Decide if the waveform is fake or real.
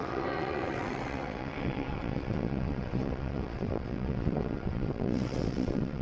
fake